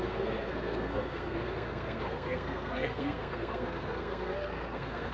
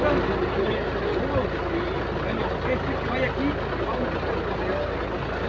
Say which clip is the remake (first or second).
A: first